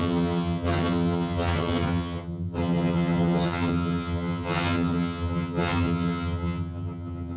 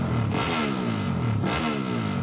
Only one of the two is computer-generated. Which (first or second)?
first